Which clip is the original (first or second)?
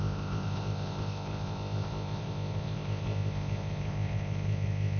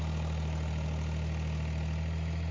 second